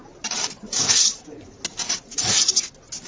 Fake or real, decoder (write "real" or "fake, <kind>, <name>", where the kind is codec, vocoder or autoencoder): real